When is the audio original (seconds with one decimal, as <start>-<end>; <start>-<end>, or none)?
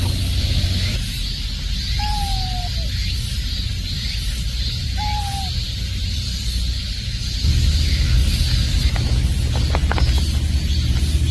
0.0-11.3